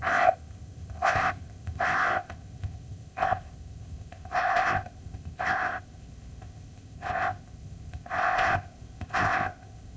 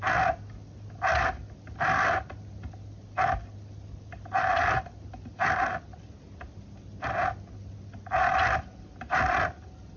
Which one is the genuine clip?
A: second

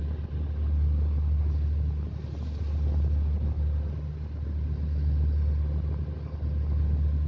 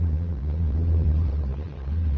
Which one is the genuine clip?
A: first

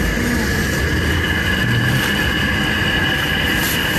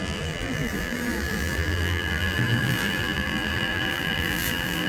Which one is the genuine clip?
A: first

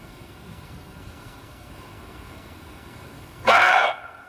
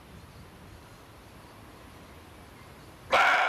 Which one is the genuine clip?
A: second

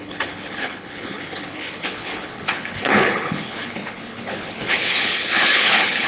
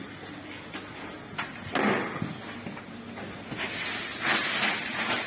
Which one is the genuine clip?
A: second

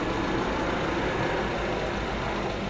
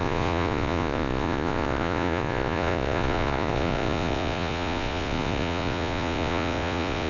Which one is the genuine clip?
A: first